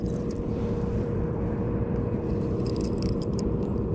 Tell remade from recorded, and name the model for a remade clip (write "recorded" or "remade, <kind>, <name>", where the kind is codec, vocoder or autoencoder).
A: remade, vocoder, BigVGAN v2